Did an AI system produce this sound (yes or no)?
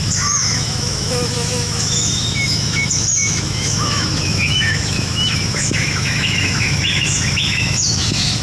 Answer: yes